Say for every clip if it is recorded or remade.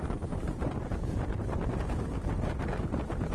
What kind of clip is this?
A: remade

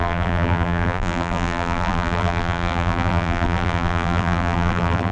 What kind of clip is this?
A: remade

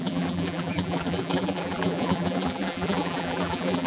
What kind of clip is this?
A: remade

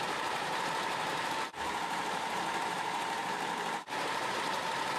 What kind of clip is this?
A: remade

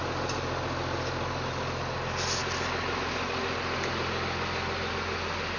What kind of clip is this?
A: recorded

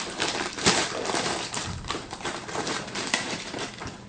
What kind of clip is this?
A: remade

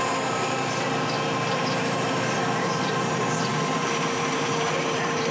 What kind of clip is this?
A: remade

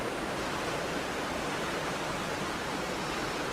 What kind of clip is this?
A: recorded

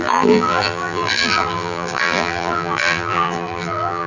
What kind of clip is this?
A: remade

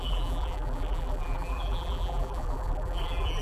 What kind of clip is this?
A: remade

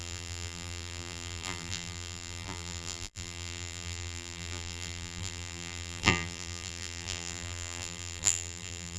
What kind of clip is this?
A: remade